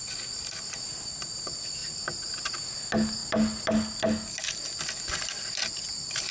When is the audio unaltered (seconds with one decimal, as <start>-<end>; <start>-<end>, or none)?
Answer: 0.0-6.3